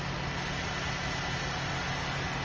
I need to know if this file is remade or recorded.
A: recorded